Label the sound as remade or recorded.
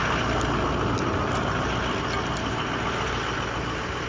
recorded